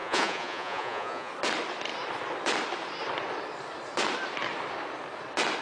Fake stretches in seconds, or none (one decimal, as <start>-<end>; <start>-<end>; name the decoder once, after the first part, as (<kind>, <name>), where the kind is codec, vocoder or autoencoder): 0.0-1.3 (vocoder, Vocos)